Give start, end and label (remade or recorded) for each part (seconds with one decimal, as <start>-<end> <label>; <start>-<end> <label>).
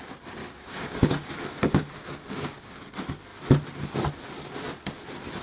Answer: 0.0-0.4 recorded; 0.4-2.8 remade; 2.8-5.4 recorded